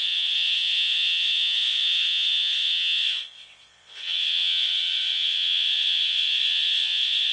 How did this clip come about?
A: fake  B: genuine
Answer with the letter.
A